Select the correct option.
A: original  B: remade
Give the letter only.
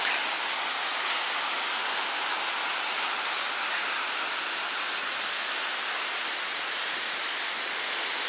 A